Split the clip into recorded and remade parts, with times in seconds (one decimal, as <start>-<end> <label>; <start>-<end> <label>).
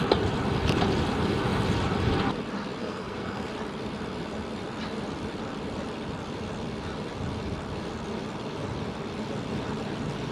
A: 0.0-2.8 recorded; 2.8-3.5 remade; 3.5-10.3 recorded